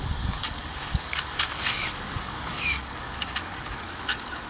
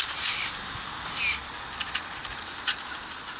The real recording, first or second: second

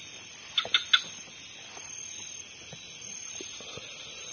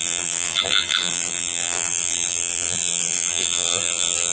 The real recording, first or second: first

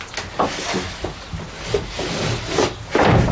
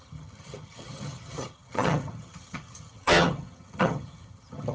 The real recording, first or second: first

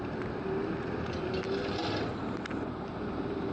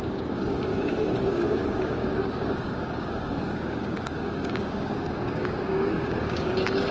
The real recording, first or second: first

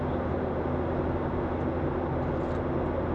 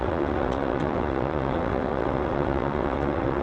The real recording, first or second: first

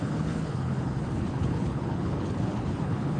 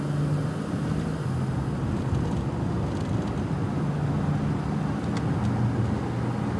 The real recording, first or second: second